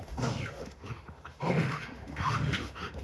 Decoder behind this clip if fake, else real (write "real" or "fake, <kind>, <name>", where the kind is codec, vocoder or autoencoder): fake, autoencoder, DAC-VAE